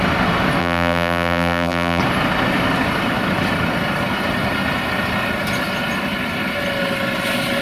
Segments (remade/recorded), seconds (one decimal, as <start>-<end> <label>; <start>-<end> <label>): 0.0-0.6 recorded; 0.6-2.0 remade; 2.0-7.6 recorded